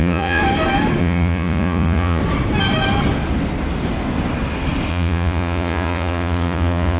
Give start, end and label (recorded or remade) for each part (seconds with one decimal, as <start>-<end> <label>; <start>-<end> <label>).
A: 0.0-0.4 remade; 0.4-1.0 recorded; 1.0-2.2 remade; 2.2-4.9 recorded; 4.9-7.0 remade